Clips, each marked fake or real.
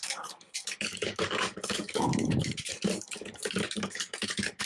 fake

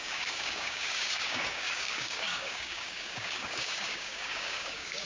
fake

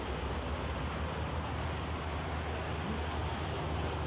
real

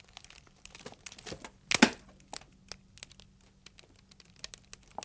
real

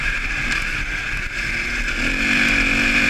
real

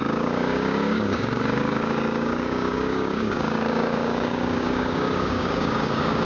fake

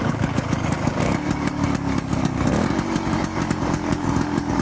fake